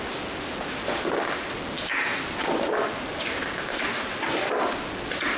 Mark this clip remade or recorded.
recorded